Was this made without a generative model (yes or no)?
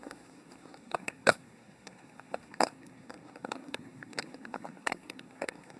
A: no